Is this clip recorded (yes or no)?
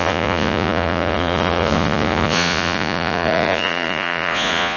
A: no